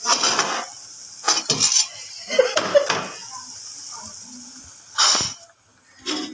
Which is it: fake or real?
real